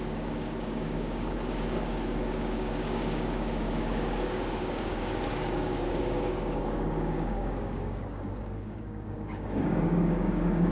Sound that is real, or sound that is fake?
fake